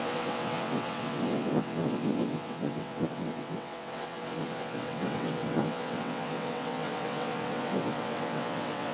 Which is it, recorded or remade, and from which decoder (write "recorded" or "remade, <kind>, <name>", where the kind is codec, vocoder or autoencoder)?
remade, vocoder, WaveNeXt